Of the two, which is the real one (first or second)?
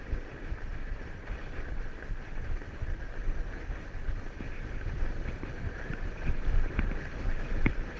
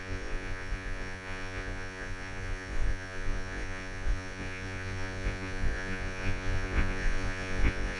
first